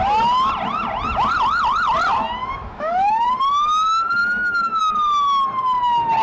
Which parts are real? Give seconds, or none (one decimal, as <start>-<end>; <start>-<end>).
0.0-2.4; 3.3-4.2; 4.8-6.2